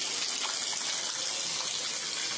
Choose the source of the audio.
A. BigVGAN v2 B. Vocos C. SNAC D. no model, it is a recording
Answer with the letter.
D